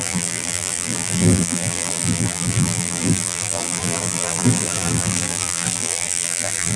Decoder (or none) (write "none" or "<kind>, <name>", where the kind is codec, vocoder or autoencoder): vocoder, BigVGAN v2